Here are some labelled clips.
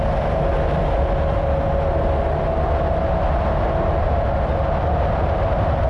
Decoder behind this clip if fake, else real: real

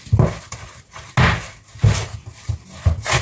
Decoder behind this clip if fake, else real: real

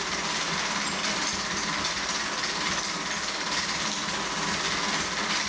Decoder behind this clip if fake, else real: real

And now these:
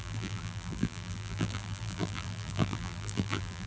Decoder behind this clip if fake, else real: fake, vocoder, BigVGAN v2